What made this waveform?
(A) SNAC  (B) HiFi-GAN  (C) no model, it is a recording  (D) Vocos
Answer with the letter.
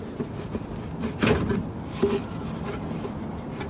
C